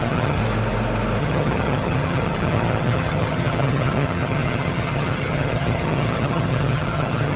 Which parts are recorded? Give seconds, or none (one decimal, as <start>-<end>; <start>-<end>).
0.4-1.2